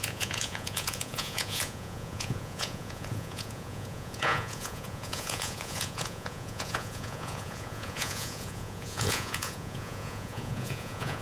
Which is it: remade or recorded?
remade